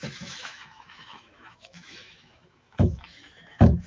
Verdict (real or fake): fake